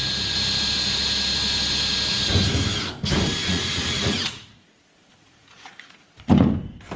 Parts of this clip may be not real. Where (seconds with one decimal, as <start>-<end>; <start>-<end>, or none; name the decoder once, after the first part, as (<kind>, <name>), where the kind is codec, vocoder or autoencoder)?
3.5-6.5 (vocoder, Vocos)